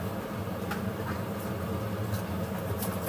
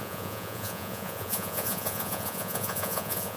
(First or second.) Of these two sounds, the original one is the first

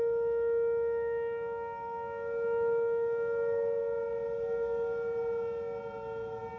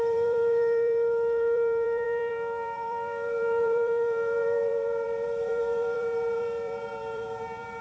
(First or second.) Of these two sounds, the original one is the first